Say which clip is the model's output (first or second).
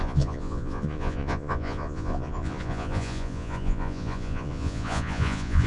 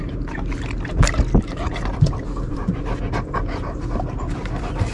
first